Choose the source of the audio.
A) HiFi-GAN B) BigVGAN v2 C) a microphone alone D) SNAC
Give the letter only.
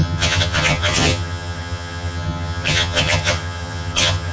A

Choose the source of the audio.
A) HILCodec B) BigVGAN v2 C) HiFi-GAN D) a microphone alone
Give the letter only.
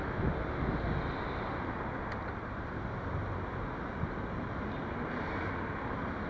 D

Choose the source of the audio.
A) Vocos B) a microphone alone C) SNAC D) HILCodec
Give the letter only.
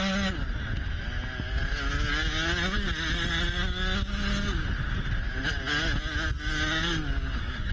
B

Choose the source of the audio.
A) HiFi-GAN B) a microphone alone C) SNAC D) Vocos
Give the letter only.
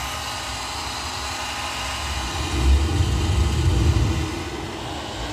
B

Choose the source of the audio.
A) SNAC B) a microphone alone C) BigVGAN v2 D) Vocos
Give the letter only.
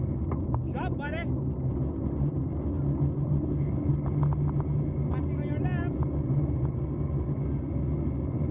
B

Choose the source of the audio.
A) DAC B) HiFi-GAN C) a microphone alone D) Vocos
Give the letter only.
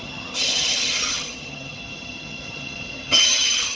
B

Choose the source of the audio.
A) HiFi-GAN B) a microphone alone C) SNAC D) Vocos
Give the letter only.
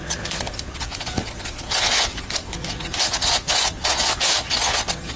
D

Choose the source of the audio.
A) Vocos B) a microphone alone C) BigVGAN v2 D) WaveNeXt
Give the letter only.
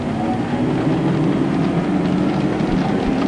B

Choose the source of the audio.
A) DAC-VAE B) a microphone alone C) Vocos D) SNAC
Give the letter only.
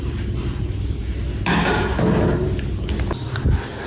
B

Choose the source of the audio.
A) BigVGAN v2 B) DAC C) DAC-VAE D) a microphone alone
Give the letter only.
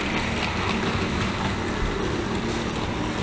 D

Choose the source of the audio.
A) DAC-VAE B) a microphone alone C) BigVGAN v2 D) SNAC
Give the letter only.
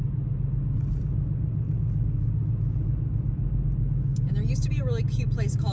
B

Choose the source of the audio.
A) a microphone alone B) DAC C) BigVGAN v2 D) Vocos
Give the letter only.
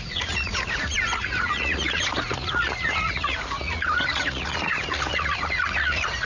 D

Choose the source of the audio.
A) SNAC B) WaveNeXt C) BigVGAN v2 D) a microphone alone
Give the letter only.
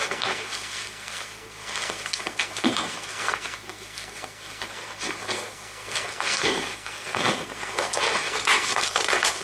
A